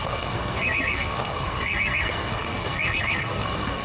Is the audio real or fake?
fake